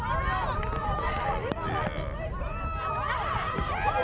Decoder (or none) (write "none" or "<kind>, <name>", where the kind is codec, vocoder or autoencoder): none